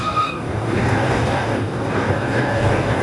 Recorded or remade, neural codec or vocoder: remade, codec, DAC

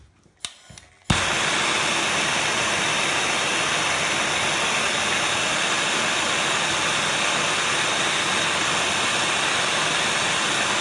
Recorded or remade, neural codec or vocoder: recorded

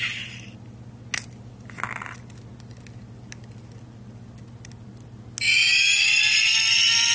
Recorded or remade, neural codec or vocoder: recorded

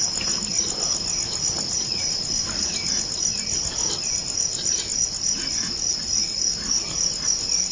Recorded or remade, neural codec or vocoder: recorded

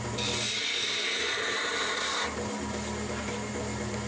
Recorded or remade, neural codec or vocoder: recorded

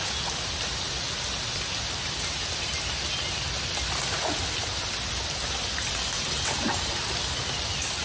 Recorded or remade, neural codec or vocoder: recorded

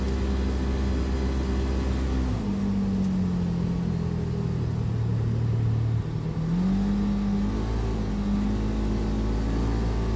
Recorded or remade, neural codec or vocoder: recorded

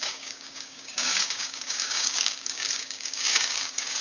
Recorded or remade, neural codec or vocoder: remade, codec, DAC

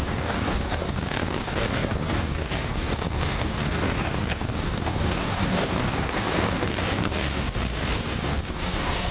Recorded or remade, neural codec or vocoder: remade, codec, DAC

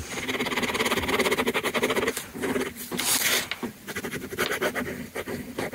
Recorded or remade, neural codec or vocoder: recorded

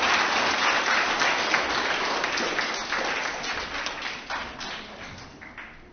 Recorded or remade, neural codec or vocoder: recorded